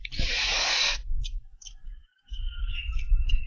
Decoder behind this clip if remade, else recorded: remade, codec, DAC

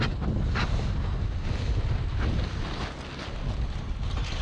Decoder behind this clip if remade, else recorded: recorded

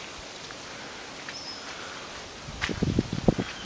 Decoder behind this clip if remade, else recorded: recorded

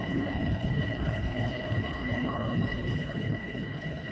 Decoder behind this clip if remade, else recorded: remade, codec, HILCodec